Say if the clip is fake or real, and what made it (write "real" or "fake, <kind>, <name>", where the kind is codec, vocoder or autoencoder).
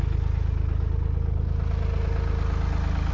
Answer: real